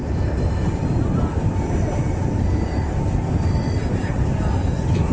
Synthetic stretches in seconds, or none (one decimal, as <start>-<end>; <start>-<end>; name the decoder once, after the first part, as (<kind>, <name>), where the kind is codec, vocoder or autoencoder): none